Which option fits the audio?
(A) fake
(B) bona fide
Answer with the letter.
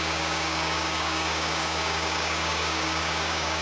A